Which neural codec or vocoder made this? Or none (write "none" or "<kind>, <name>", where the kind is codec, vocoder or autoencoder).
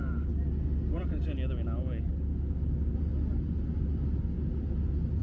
none